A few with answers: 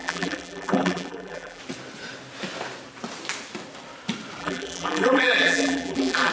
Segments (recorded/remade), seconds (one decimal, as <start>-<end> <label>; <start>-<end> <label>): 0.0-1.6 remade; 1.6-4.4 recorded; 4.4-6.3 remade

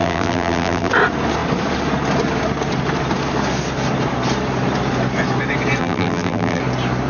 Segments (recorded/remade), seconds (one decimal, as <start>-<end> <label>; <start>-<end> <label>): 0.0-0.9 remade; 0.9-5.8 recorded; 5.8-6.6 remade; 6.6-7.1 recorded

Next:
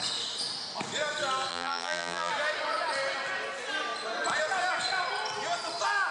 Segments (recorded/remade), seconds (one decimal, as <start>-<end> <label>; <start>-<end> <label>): 0.0-1.5 recorded; 1.5-2.3 remade; 2.3-6.1 recorded